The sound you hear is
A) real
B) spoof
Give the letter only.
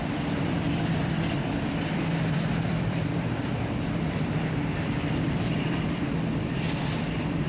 B